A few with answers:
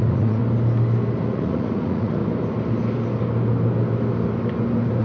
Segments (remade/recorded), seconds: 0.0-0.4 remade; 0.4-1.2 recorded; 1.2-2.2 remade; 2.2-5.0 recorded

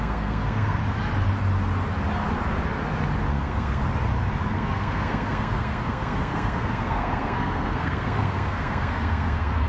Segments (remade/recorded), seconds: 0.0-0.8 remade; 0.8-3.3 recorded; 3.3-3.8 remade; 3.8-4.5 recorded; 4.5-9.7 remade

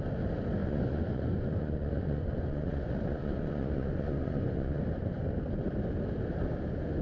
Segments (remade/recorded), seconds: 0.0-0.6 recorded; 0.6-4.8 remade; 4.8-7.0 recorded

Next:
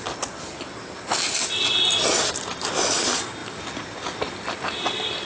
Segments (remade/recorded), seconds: 0.0-5.3 recorded